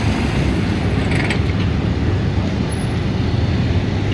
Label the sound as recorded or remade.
recorded